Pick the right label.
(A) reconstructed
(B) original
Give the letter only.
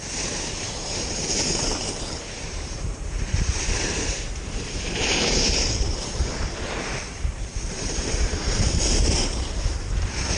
A